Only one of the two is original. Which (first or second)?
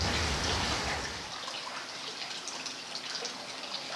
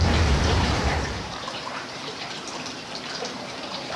first